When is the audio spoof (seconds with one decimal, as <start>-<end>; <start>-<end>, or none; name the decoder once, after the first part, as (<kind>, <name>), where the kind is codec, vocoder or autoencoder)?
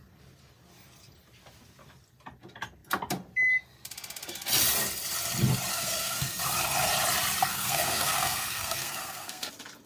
5.7-6.4 (codec, SNAC); 7.5-9.5